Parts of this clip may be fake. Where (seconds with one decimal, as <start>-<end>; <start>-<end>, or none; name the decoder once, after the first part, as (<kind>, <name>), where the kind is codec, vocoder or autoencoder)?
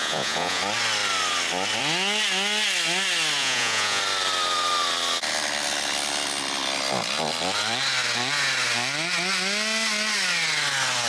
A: 0.0-0.6 (vocoder, Vocos); 3.4-4.0